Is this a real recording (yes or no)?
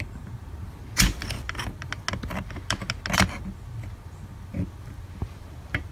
yes